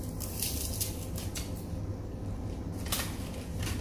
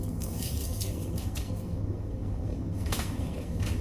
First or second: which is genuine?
first